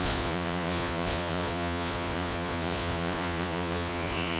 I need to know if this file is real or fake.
fake